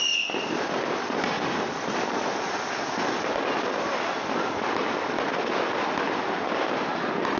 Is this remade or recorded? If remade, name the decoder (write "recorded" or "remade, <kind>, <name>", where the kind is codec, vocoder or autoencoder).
recorded